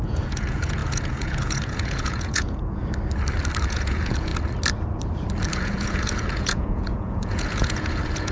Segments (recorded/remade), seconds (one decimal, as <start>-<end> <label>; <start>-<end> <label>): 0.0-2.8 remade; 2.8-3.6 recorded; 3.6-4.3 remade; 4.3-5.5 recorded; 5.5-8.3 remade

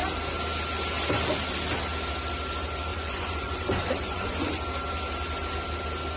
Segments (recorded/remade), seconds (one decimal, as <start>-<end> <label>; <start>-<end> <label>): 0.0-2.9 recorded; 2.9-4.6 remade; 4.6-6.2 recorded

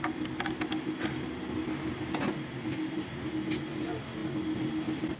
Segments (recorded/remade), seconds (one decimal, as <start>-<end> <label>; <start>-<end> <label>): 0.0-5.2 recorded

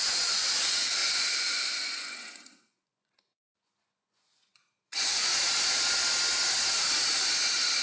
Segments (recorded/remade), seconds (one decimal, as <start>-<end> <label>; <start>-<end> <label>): 0.0-5.3 remade; 5.3-7.8 recorded